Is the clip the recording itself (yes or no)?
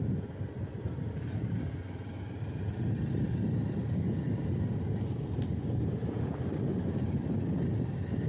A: yes